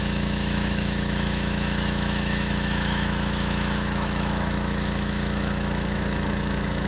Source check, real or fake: fake